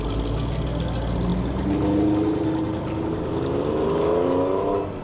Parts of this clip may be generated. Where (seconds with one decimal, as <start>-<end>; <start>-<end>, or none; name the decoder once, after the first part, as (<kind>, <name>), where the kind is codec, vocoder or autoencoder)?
none